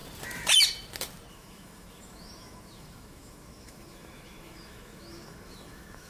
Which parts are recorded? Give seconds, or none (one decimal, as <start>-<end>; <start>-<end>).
0.0-1.3